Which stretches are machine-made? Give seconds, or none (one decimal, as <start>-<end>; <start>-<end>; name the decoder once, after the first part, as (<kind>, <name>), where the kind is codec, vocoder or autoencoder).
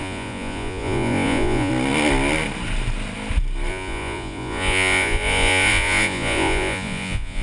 0.0-1.7 (vocoder, Vocos); 3.7-7.4